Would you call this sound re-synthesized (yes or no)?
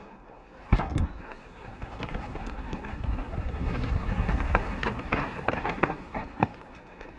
yes